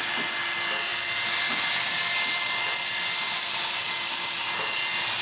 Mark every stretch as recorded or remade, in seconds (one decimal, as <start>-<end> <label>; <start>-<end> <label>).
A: 0.0-5.2 recorded